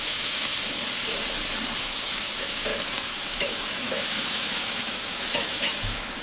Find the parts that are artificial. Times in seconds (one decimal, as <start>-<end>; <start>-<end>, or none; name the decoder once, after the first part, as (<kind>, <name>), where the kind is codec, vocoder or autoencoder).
0.0-0.5 (autoencoder, DAC-VAE); 1.8-6.2